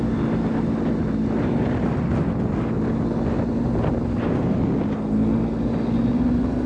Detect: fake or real real